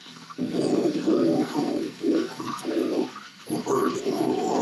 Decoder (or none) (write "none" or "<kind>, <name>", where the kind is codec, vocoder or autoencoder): codec, SNAC